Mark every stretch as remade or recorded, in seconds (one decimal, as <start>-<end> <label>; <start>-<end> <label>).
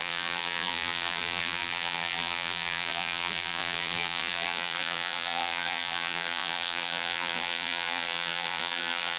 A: 0.0-9.2 remade